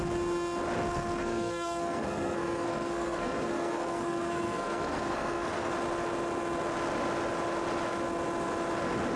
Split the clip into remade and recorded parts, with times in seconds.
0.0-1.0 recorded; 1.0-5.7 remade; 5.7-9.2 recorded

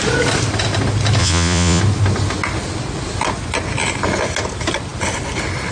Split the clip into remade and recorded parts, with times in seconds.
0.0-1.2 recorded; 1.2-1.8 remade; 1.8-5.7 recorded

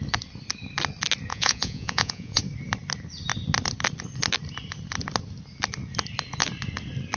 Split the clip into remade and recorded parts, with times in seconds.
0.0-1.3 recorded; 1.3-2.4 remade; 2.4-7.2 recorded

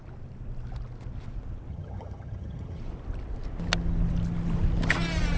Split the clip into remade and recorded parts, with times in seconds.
0.0-1.7 recorded; 1.7-2.8 remade; 2.8-5.4 recorded